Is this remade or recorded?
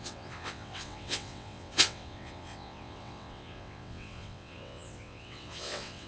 remade